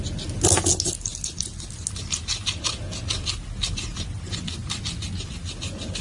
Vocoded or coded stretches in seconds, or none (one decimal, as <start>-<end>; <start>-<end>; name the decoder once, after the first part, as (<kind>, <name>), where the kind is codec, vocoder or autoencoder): none